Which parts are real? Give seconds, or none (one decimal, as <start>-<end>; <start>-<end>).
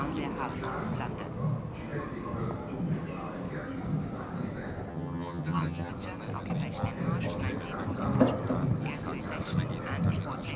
0.0-4.9; 5.9-10.6